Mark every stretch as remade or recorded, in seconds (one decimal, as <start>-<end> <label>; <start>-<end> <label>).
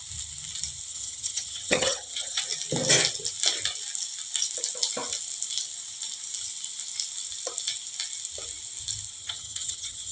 0.0-0.9 recorded; 0.9-2.4 remade; 2.4-9.2 recorded; 9.2-10.1 remade